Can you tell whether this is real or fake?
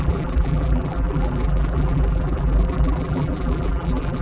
fake